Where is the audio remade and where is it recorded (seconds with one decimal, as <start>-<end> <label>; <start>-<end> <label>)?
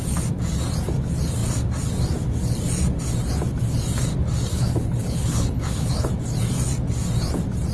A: 0.0-4.5 recorded; 4.5-6.1 remade; 6.1-7.7 recorded